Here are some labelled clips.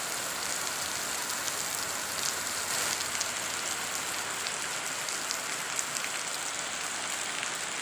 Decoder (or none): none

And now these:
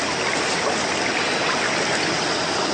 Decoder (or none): none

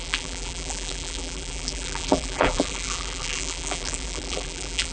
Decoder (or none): vocoder, BigVGAN v2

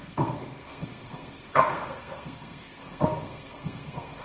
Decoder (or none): codec, SNAC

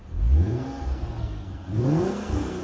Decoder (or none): codec, SNAC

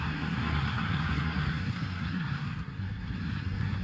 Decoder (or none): codec, SNAC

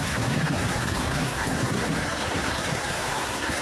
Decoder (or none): codec, SNAC